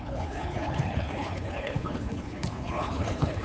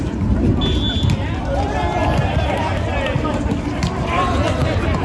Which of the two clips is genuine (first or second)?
second